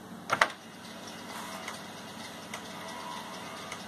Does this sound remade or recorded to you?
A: recorded